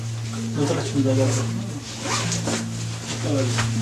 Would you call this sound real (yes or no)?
yes